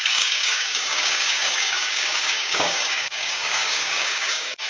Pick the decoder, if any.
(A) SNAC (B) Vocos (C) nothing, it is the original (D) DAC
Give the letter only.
D